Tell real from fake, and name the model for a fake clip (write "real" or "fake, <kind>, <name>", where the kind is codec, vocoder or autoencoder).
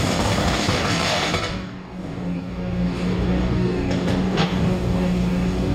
fake, codec, DAC